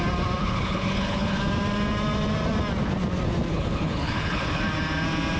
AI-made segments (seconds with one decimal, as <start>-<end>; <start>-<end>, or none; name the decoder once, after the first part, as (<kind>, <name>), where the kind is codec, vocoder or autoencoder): 0.4-1.4 (codec, HILCodec); 3.5-4.6